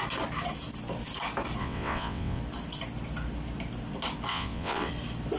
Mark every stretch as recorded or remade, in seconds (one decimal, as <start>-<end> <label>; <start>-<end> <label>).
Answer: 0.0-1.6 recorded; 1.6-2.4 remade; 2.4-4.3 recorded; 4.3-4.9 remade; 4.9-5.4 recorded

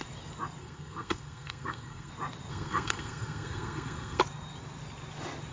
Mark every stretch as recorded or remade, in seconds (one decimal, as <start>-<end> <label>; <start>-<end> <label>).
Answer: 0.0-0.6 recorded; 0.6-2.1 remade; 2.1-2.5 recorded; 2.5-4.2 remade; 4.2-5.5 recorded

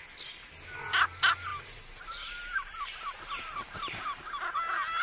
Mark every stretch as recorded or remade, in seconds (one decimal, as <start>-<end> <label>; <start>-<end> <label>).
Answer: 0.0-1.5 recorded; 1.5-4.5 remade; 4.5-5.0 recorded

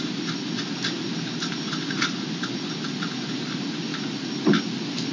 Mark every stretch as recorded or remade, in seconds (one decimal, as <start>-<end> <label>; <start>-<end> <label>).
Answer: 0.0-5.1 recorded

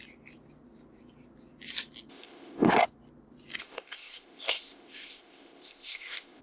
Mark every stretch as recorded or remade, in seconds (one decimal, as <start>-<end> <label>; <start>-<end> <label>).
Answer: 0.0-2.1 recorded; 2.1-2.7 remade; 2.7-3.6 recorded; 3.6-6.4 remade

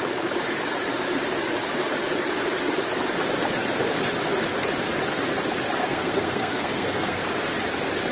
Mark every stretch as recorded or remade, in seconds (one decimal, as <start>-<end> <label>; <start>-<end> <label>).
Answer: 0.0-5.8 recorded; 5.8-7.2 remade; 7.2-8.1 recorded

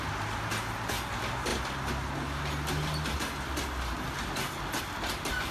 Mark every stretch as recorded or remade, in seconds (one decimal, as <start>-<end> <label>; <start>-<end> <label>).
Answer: 0.0-5.5 recorded

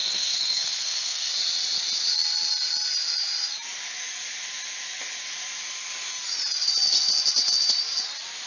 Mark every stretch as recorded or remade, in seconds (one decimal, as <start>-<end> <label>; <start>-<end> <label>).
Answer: 0.0-1.3 remade; 1.3-8.5 recorded